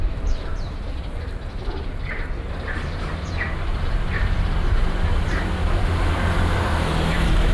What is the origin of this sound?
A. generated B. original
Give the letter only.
A